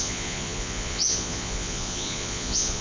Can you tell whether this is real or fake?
fake